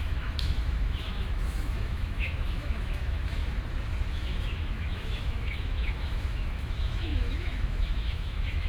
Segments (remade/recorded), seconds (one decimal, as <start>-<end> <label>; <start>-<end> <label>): 0.0-3.4 remade; 3.4-4.1 recorded; 4.1-8.7 remade